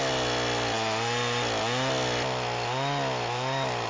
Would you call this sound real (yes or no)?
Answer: yes